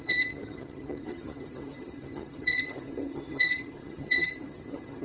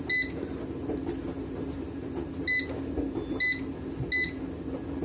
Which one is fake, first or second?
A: first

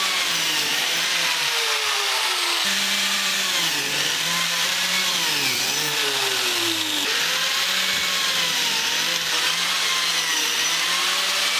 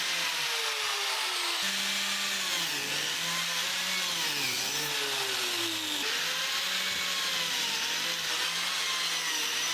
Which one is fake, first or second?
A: first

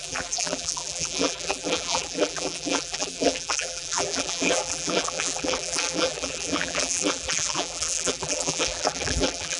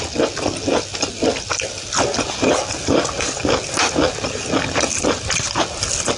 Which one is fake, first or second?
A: first